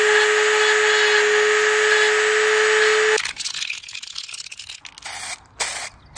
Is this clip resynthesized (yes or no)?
no